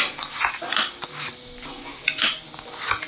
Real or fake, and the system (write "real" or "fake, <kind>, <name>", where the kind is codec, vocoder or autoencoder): real